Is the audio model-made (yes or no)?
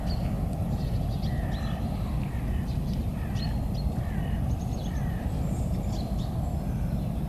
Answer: no